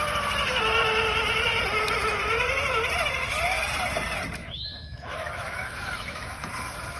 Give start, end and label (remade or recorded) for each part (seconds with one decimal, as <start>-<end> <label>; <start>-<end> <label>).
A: 0.0-4.4 recorded; 4.4-6.5 remade; 6.5-7.0 recorded